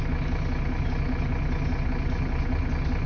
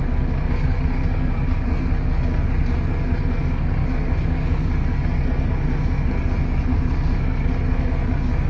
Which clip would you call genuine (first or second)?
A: first